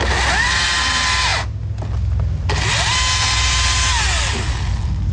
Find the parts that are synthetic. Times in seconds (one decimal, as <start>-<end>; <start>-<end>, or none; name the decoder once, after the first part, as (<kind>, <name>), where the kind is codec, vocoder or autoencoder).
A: none